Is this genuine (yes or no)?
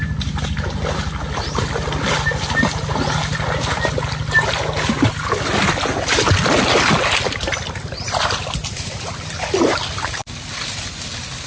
yes